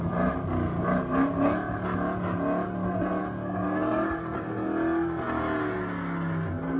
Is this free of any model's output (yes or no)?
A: yes